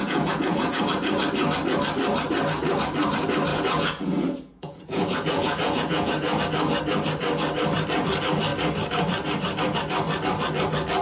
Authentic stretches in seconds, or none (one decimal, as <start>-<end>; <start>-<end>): 0.8-3.5; 6.4-11.0